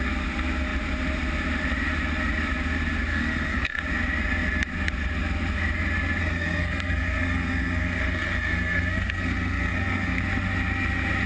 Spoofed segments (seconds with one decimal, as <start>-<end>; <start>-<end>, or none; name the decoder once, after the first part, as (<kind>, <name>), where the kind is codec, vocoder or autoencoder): 3.1-3.8 (codec, SNAC); 6.2-10.2

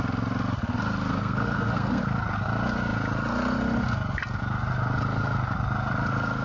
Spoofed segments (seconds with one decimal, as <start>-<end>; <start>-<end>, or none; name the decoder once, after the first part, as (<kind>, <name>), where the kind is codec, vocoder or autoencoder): 1.1-2.0 (codec, SNAC)

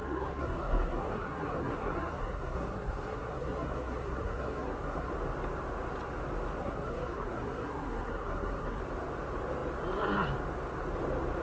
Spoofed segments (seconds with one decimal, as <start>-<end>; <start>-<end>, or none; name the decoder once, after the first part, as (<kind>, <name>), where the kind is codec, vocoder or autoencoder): 0.0-5.1 (codec, SNAC); 6.6-8.8

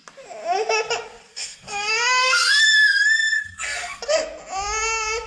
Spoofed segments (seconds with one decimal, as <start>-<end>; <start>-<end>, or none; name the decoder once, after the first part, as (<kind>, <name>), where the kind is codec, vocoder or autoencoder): 1.3-4.0 (codec, SNAC)

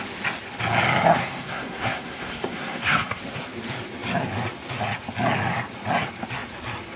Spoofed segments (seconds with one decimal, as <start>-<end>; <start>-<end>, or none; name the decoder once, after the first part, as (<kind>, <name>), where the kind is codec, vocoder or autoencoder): 1.2-3.2 (codec, SNAC)

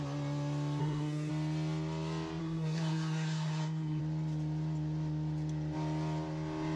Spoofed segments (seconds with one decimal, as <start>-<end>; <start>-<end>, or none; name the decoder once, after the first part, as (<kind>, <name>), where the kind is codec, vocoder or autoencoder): 0.8-1.3 (codec, SNAC); 2.4-4.0

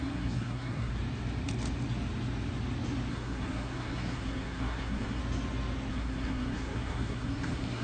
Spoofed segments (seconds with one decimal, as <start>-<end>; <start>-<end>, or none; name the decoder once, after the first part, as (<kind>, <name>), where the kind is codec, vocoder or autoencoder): 0.0-0.9 (codec, SNAC); 3.1-5.2; 5.9-7.8